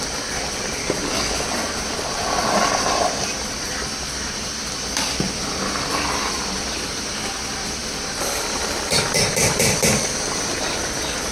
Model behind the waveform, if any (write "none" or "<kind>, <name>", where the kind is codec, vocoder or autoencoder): none